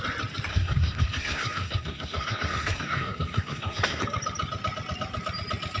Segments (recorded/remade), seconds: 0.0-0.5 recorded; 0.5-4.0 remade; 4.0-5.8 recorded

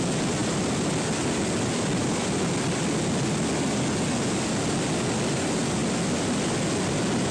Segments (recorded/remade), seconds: 0.0-7.3 recorded

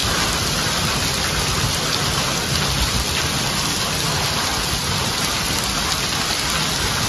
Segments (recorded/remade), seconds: 0.0-7.1 recorded

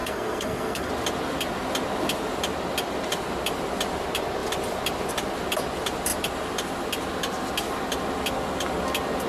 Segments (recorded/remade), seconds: 0.0-0.9 remade; 0.9-9.3 recorded

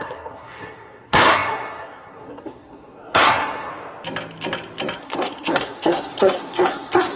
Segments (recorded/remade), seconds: 0.0-3.7 remade; 3.7-5.0 recorded; 5.0-7.2 remade

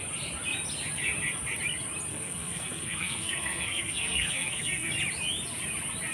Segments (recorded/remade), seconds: 0.0-2.1 recorded; 2.1-4.9 remade; 4.9-6.1 recorded